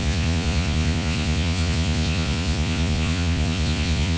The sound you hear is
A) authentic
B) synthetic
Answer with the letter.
B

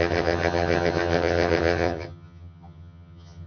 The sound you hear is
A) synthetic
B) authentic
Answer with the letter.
A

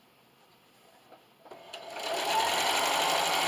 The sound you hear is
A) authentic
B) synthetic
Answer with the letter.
A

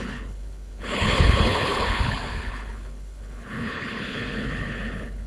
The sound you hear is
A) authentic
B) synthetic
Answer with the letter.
B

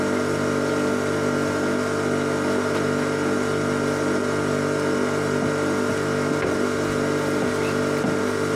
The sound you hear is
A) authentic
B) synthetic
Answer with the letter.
A